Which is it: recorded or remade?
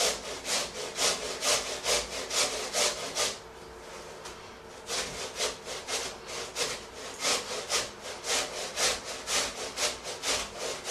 recorded